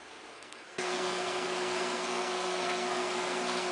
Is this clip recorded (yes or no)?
no